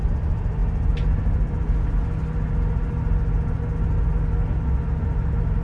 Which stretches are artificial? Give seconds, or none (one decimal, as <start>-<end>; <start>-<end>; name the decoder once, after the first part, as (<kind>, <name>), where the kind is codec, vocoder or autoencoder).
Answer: none

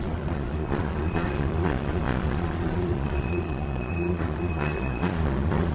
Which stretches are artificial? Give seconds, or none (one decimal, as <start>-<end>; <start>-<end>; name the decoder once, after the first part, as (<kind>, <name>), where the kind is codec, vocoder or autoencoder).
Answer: 0.0-5.7 (vocoder, Vocos)

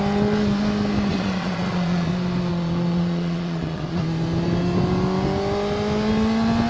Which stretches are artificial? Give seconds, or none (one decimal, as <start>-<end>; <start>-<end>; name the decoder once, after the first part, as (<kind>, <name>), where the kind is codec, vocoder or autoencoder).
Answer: 1.1-2.1 (vocoder, Vocos); 2.5-4.0

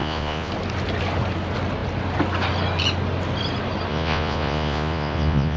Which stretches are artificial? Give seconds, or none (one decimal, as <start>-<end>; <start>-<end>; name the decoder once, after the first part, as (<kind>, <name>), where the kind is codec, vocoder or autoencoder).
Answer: 0.0-0.5 (vocoder, Vocos); 3.9-5.6

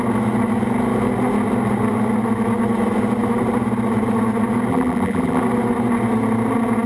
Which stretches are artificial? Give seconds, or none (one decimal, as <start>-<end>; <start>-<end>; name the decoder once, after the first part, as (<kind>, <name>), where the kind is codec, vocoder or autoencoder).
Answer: 4.7-5.4 (vocoder, BigVGAN v2)

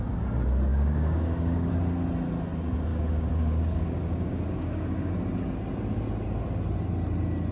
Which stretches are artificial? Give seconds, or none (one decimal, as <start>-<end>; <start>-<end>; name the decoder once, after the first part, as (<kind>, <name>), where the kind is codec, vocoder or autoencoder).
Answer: 0.7-1.7 (codec, DAC); 2.9-5.1